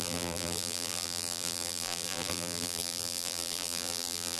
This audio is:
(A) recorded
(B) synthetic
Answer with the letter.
B